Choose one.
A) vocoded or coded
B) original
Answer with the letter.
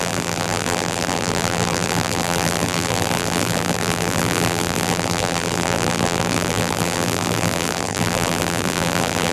A